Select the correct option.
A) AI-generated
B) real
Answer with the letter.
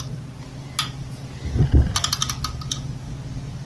B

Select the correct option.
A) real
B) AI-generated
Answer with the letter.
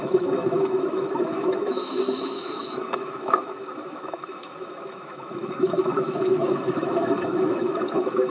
B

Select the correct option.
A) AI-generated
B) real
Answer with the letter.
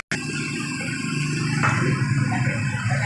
B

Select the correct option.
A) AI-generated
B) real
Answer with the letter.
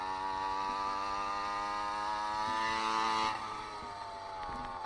B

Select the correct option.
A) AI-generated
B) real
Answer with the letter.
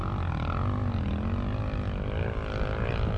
B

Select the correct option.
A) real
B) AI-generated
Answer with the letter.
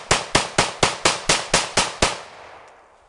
A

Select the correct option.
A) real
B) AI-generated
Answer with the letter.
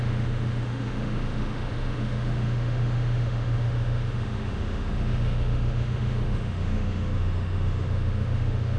B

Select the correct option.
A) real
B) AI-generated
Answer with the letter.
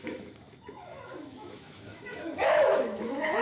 B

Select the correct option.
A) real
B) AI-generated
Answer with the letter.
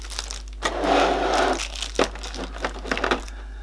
A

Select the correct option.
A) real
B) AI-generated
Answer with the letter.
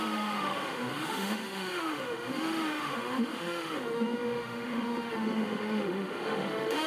B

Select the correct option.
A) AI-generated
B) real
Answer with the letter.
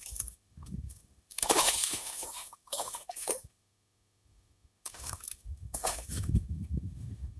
A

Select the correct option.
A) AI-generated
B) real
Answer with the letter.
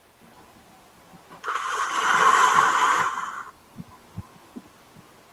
B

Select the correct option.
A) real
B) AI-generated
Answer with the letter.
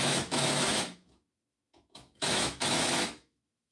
B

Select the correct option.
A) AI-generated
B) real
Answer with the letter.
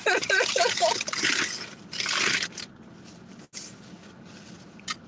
B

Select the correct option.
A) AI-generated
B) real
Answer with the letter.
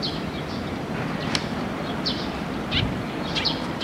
B